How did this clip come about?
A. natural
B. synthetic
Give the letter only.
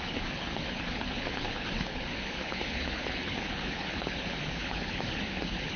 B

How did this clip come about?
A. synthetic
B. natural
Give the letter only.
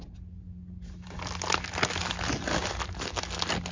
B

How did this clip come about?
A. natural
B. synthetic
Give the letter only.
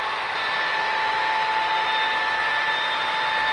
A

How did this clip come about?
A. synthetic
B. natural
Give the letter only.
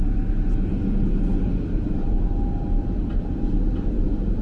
B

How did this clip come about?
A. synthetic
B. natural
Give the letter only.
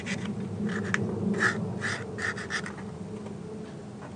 B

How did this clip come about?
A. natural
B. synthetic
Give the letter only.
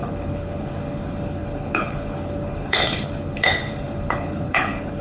B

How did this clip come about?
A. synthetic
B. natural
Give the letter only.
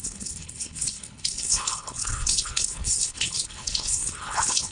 A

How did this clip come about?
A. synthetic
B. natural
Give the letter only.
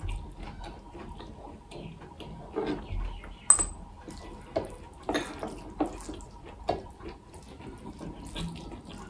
B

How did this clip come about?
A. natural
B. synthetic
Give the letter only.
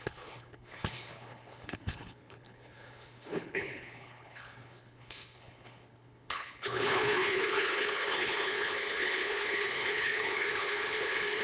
B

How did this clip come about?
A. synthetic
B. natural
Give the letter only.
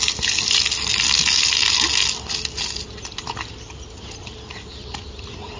B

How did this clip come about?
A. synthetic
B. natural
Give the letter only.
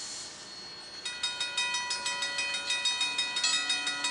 B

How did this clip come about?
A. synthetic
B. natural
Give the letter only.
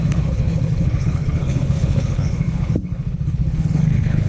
A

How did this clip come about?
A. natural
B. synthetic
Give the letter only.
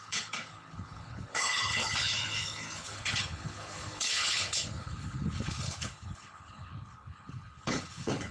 B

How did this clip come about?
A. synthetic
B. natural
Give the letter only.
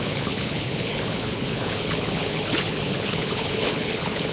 A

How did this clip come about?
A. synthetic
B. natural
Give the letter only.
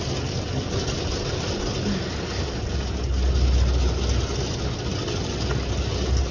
B